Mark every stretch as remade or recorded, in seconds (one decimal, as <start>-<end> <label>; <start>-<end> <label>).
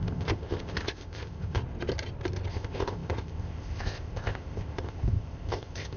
0.0-1.6 remade; 1.6-2.5 recorded; 2.5-6.0 remade